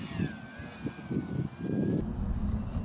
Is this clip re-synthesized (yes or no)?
no